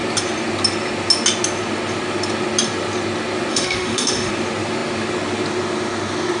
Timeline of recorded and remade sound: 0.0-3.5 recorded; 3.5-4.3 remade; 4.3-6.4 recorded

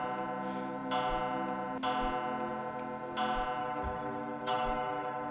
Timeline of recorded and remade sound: 0.0-3.6 recorded; 3.6-5.3 remade

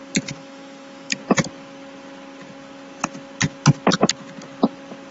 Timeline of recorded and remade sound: 0.0-0.4 recorded; 0.4-1.2 remade; 1.2-5.1 recorded